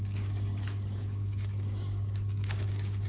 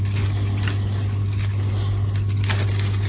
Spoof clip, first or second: first